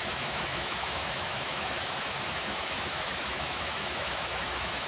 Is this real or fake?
fake